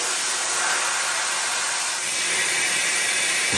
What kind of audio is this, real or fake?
real